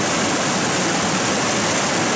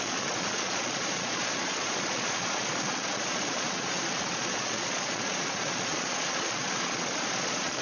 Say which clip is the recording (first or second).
first